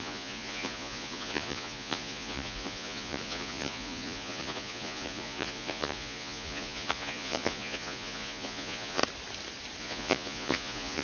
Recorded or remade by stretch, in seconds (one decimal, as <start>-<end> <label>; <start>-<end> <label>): 0.0-9.0 remade; 9.0-9.8 recorded; 9.8-11.0 remade